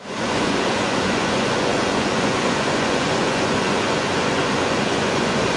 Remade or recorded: remade